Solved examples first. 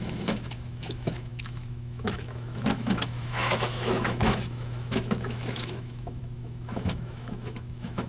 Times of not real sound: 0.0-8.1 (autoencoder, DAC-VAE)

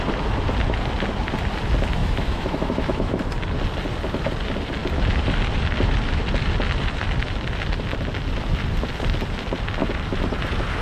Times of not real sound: 2.0-3.2 (autoencoder, DAC-VAE)

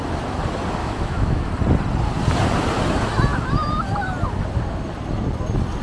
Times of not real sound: 0.8-1.5 (autoencoder, DAC-VAE)

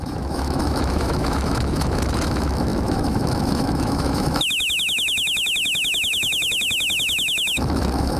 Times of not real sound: 0.0-8.2 (autoencoder, DAC-VAE)

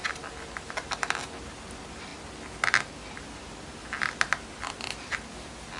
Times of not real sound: none

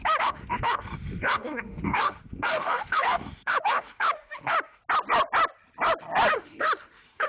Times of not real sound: 0.0-4.8 (autoencoder, DAC-VAE); 6.3-7.3